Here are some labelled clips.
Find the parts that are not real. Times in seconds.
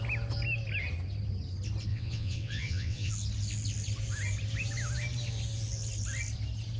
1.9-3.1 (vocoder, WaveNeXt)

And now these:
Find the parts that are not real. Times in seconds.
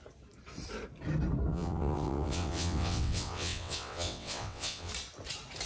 1.5-4.9 (vocoder, WaveNeXt)